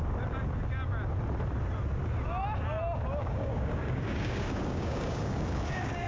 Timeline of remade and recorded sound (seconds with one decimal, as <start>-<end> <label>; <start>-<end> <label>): 0.0-3.2 recorded; 3.2-6.1 remade